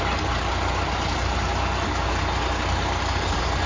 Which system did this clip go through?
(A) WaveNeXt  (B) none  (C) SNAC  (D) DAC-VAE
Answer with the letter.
B